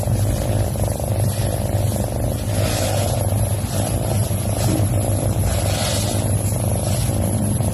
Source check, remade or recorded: recorded